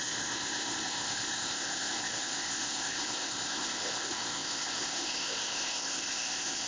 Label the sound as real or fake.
fake